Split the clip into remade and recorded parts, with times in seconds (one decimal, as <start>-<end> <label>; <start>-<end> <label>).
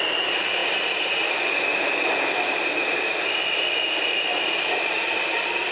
0.0-5.7 recorded